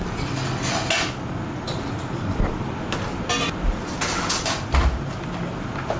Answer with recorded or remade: recorded